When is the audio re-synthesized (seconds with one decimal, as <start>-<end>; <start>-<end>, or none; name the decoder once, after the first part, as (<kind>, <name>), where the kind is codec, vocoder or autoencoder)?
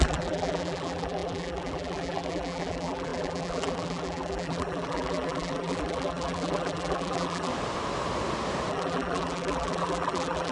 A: 0.0-7.5 (vocoder, BigVGAN v2); 8.7-10.5